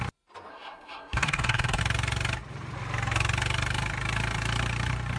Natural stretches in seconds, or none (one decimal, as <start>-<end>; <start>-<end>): 0.0-0.5; 1.8-5.2